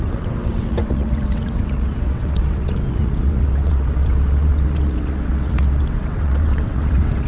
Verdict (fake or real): fake